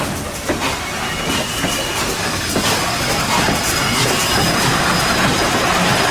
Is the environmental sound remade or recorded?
recorded